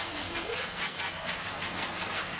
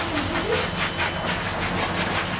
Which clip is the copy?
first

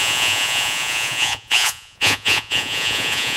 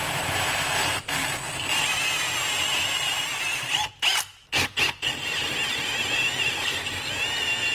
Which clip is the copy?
first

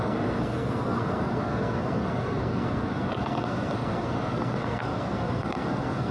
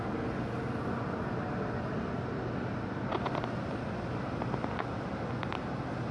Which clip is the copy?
first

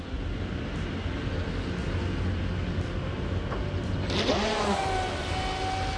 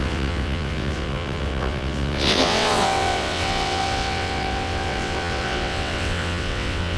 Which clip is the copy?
second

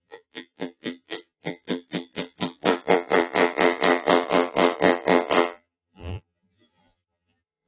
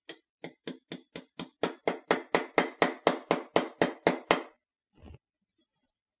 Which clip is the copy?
first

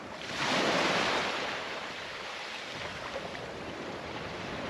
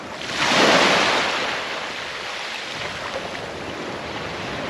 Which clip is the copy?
first